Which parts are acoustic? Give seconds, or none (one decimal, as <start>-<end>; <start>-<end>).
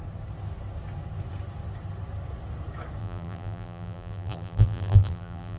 0.0-3.0